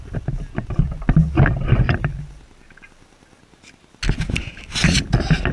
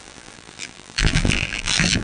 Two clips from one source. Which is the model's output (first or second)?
second